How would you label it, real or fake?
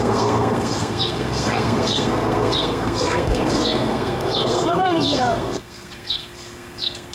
fake